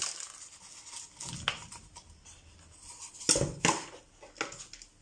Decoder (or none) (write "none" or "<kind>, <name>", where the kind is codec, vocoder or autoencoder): none